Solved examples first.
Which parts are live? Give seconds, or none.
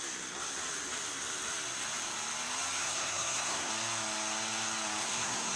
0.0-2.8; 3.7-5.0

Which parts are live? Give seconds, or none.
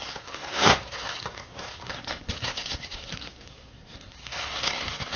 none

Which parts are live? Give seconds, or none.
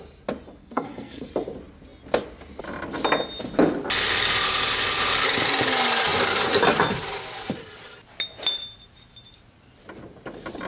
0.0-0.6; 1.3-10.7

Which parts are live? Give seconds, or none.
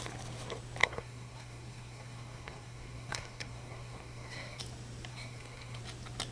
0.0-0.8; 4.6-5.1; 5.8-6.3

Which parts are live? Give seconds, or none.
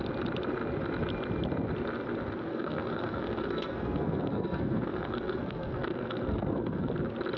0.0-2.5; 6.9-7.4